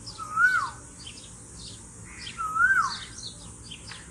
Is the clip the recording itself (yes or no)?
yes